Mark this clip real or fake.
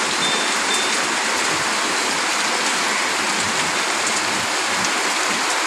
real